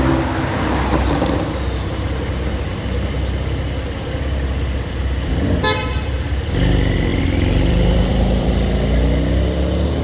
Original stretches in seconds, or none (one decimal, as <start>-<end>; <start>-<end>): 0.0-7.1; 8.5-10.0